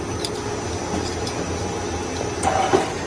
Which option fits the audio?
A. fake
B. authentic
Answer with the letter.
B